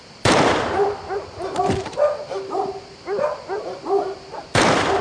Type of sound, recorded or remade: recorded